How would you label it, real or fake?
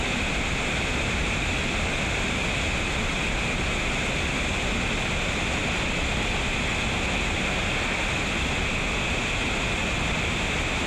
real